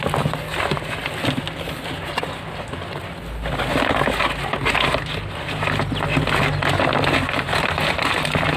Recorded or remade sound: recorded